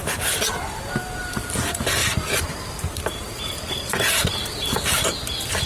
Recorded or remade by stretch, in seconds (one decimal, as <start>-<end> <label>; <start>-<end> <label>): 0.0-2.0 recorded; 2.0-3.9 remade; 3.9-5.7 recorded

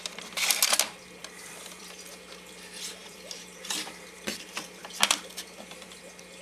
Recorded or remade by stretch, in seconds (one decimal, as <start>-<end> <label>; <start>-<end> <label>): 0.0-1.2 recorded; 1.2-2.0 remade; 2.0-3.0 recorded; 3.0-4.0 remade; 4.0-4.8 recorded; 4.8-6.0 remade; 6.0-6.4 recorded

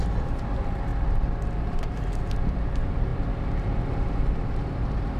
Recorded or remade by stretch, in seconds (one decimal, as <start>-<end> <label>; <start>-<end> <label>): 0.0-0.9 remade; 0.9-1.6 recorded; 1.6-5.2 remade

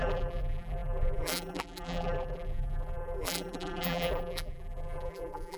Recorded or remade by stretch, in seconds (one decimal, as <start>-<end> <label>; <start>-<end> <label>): 0.0-5.6 remade

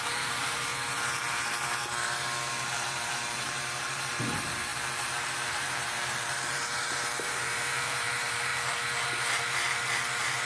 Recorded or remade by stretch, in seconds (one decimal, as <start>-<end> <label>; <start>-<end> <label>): 0.0-0.7 remade; 0.7-2.5 recorded; 2.5-8.5 remade; 8.5-10.5 recorded

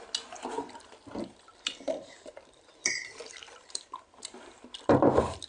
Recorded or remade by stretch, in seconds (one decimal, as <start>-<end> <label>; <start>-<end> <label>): 0.0-1.3 recorded; 1.3-4.6 remade; 4.6-5.5 recorded